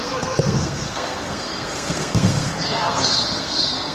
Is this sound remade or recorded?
remade